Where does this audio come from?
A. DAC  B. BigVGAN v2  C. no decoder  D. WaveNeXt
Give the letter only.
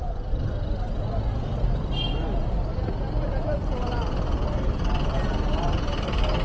C